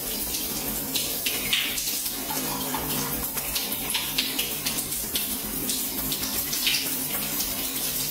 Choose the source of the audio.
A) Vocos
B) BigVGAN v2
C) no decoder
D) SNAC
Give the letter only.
B